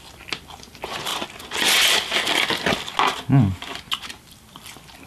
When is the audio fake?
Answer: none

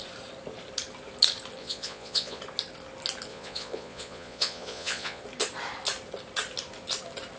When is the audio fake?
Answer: 1.6-2.4; 3.3-5.2